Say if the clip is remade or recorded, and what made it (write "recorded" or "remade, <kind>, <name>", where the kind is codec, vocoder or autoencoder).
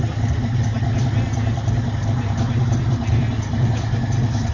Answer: recorded